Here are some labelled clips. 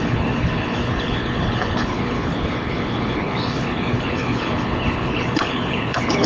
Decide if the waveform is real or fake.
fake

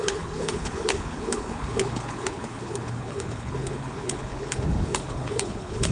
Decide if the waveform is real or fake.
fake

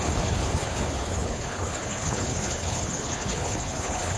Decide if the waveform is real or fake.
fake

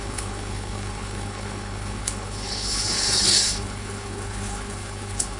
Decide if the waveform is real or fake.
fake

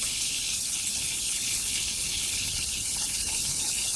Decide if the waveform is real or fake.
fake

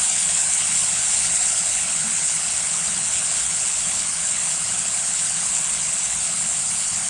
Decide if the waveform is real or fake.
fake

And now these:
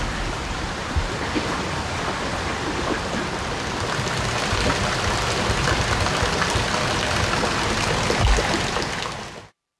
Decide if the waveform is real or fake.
real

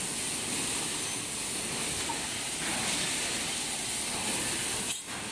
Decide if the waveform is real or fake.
real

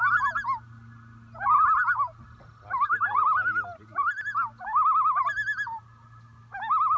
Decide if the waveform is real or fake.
real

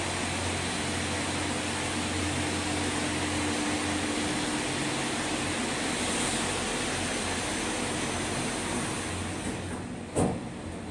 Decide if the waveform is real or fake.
real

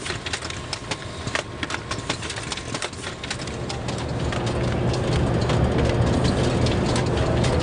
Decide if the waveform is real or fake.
real